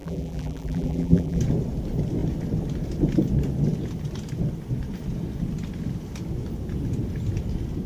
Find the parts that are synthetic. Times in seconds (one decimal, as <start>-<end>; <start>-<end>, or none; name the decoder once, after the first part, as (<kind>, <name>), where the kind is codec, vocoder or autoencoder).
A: 0.0-1.4 (vocoder, BigVGAN v2)